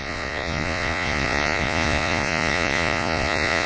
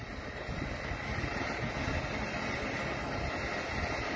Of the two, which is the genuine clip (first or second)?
second